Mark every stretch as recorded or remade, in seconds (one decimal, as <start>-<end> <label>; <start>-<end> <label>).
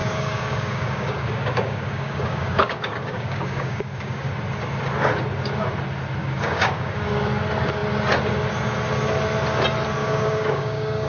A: 0.0-4.3 remade; 4.3-6.2 recorded; 6.2-7.1 remade; 7.1-10.0 recorded; 10.0-11.1 remade